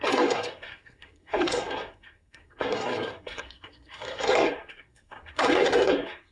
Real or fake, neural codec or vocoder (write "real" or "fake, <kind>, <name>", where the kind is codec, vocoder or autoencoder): fake, codec, SNAC